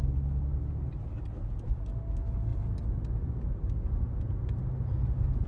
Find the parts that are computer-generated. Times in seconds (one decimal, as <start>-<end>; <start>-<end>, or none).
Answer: none